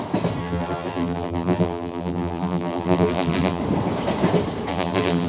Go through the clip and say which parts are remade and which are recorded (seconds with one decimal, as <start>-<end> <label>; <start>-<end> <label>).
0.0-0.4 recorded; 0.4-3.6 remade; 3.6-4.7 recorded; 4.7-5.3 remade